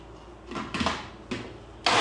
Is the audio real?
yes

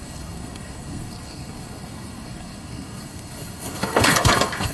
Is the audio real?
no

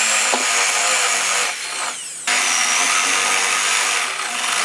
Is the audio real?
yes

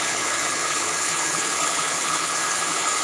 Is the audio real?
no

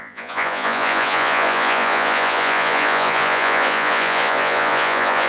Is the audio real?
no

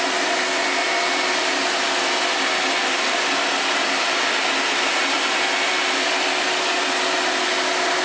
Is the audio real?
yes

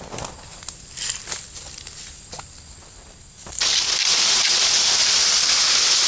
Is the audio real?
yes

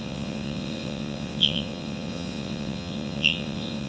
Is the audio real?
no